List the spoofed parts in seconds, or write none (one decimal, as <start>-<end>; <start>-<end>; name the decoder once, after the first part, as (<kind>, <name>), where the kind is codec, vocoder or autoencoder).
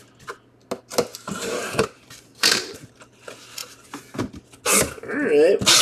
1.1-2.9 (vocoder, BigVGAN v2)